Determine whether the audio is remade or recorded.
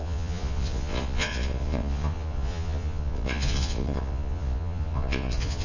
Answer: remade